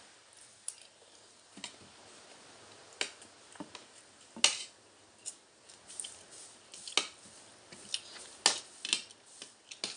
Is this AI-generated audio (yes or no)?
no